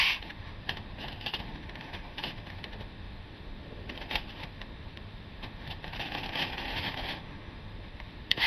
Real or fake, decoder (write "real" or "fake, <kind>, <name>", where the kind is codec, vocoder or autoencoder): fake, autoencoder, DAC-VAE